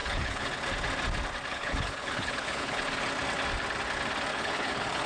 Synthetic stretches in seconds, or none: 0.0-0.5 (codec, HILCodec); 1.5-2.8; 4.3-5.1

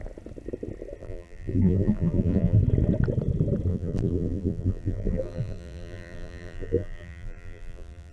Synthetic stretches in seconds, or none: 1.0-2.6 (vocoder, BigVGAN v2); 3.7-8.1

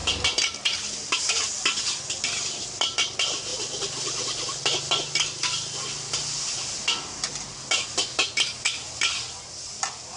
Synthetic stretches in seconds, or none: none